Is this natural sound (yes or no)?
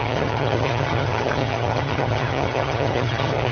no